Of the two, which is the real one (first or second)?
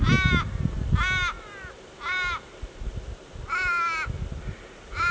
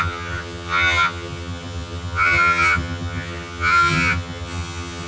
first